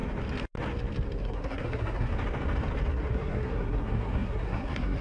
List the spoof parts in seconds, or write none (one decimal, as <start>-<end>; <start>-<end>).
1.2-2.1; 2.9-5.0